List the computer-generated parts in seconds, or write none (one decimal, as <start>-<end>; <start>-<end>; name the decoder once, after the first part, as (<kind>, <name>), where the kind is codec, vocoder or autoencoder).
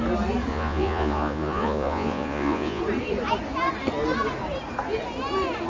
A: 0.5-2.8 (vocoder, Vocos)